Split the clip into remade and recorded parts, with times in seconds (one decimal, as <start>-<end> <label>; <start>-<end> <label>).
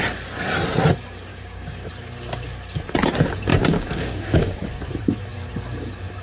0.0-1.3 recorded; 1.3-1.9 remade; 1.9-3.5 recorded; 3.5-4.6 remade; 4.6-6.2 recorded